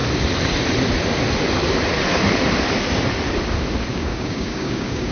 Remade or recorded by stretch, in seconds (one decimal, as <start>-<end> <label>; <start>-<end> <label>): 0.0-3.9 recorded; 3.9-5.1 remade